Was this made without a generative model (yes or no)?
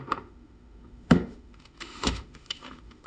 no